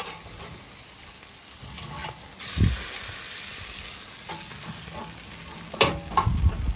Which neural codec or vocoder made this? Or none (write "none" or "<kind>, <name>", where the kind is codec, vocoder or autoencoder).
none